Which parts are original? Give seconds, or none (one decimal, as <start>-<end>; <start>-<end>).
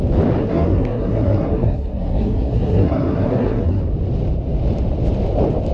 0.0-0.4; 3.8-5.7